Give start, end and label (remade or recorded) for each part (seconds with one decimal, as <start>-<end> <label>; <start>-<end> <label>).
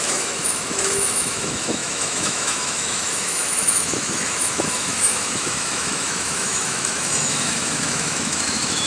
0.0-8.9 remade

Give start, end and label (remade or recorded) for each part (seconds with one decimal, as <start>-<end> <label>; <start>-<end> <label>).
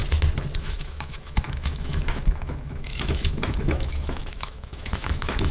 0.0-0.6 recorded; 0.6-5.5 remade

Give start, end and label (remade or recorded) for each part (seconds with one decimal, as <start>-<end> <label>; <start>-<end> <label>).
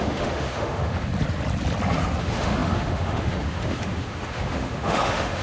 0.0-1.1 remade; 1.1-2.2 recorded; 2.2-5.4 remade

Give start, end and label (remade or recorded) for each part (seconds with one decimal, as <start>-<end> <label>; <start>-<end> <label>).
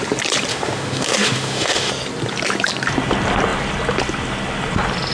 0.0-0.5 recorded; 0.5-1.9 remade; 1.9-5.1 recorded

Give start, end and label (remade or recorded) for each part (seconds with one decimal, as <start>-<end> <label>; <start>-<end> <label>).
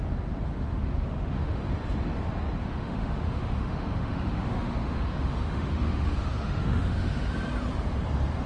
0.0-0.5 recorded; 0.5-1.6 remade; 1.6-2.6 recorded; 2.6-7.3 remade; 7.3-8.5 recorded